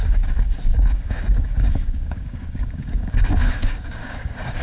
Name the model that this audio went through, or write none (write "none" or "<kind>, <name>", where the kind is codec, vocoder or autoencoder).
codec, DAC